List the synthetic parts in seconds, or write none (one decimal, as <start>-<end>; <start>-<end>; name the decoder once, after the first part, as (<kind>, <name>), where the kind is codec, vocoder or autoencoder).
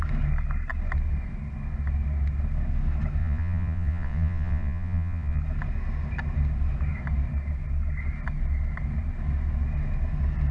3.2-5.4 (vocoder, Vocos)